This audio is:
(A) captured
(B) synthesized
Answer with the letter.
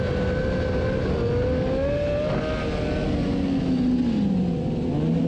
A